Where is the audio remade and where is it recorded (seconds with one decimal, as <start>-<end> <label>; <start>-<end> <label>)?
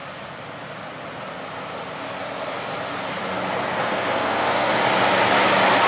0.0-3.8 recorded; 3.8-4.7 remade; 4.7-5.9 recorded